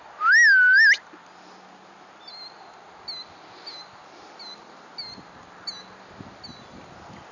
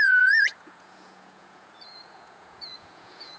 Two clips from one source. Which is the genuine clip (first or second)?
first